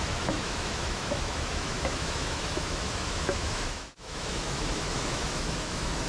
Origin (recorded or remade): remade